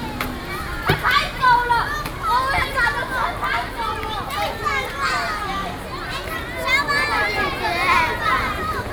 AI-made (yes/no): no